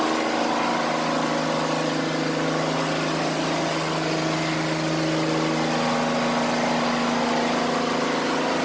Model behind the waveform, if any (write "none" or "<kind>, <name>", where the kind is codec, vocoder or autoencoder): none